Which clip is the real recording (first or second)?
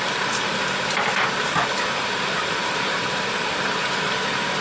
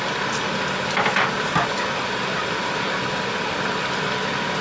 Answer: second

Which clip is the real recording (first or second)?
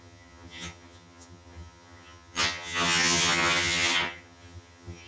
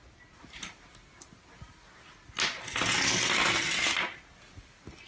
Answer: second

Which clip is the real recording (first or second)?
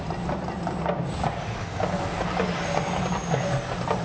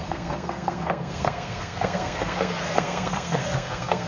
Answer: first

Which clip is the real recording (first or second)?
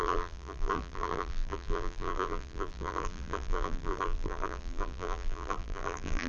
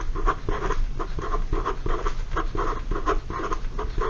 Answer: second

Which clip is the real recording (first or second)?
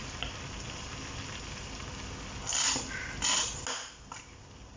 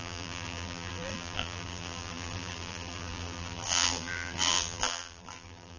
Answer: first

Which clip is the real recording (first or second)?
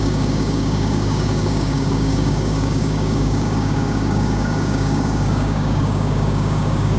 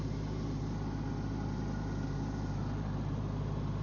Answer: second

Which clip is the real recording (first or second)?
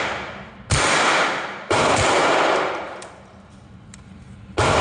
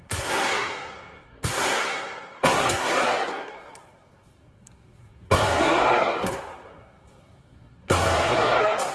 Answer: first